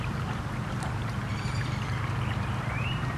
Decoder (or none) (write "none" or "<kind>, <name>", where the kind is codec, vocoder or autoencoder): vocoder, BigVGAN v2